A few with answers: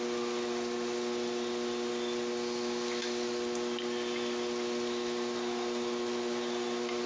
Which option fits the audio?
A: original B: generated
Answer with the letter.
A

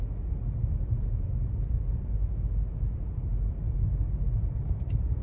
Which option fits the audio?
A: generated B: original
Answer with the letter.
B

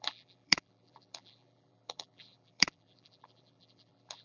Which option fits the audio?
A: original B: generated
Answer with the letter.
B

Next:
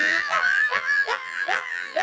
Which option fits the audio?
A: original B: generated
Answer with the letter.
B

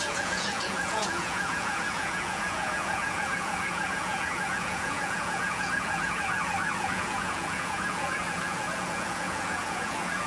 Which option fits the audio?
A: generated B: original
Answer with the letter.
A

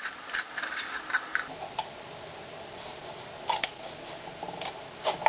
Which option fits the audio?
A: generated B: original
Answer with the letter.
B